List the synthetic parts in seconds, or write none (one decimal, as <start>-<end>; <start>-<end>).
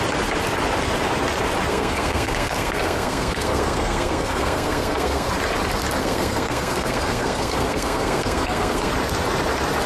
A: 1.7-5.3; 6.0-8.9